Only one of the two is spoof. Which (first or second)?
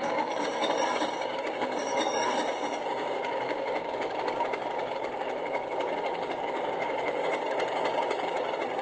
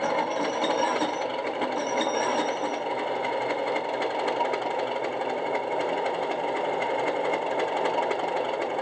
first